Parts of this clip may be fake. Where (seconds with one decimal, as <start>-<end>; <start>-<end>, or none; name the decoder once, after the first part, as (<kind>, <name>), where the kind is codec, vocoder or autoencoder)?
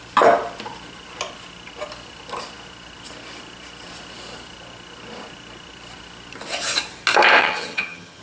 7.4-8.2 (vocoder, HiFi-GAN)